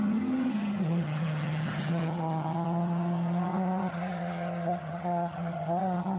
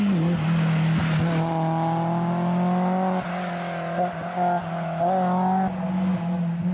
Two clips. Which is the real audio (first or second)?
second